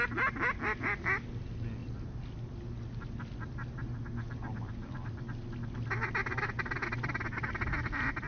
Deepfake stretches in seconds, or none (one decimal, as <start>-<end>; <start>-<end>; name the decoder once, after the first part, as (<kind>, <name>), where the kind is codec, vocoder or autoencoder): none